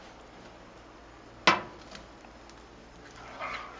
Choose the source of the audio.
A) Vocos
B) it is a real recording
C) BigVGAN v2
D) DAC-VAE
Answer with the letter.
B